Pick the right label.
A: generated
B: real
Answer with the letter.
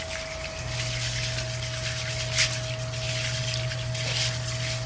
B